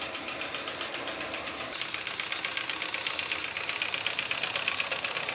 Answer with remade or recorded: recorded